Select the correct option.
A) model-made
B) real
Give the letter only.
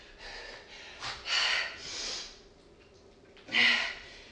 B